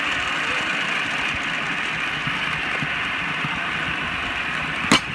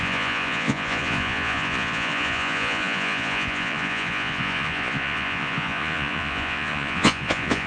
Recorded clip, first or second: first